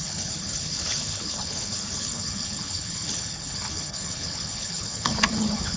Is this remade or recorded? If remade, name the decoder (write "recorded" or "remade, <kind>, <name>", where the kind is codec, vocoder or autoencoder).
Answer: remade, codec, HILCodec